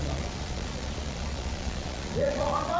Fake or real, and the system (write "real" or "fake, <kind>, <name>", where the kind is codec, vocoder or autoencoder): fake, vocoder, Vocos